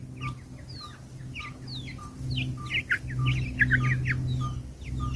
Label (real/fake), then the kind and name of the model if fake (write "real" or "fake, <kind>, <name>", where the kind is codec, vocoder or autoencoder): real